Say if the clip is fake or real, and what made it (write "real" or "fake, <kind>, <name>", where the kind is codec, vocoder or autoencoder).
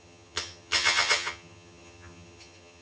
fake, vocoder, HiFi-GAN